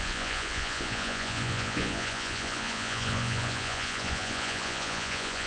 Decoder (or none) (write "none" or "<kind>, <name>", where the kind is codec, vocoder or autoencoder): vocoder, Vocos